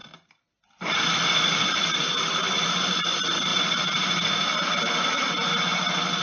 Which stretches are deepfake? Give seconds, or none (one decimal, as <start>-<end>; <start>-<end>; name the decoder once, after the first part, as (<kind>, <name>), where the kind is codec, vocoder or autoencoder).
none